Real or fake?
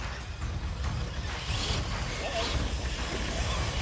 real